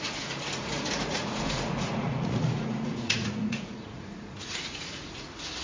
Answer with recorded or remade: remade